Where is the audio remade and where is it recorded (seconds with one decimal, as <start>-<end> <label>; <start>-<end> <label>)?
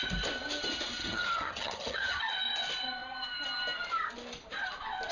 0.0-1.0 recorded; 1.0-2.2 remade; 2.2-5.1 recorded